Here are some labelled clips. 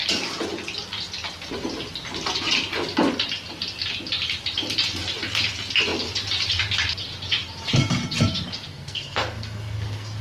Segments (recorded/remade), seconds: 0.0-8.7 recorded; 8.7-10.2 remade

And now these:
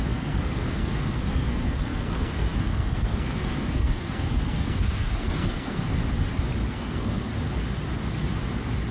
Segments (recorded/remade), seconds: 0.0-6.0 remade; 6.0-6.7 recorded; 6.7-7.3 remade; 7.3-8.9 recorded